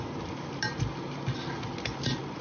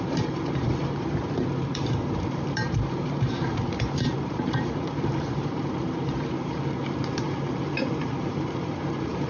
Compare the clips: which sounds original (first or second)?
first